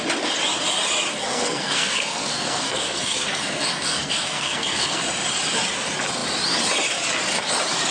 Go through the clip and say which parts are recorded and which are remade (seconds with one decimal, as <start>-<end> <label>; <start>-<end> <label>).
0.0-1.1 recorded; 1.1-5.0 remade; 5.0-7.9 recorded